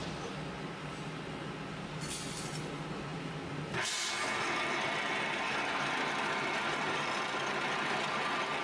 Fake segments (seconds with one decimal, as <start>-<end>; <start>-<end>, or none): none